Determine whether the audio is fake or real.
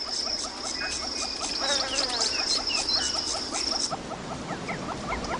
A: real